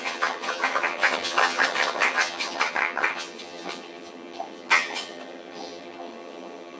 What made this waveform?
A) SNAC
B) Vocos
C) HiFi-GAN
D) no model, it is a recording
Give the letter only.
C